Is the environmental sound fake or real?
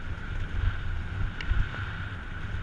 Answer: real